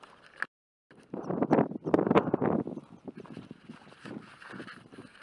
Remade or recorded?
recorded